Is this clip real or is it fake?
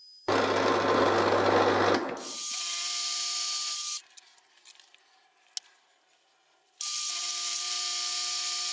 real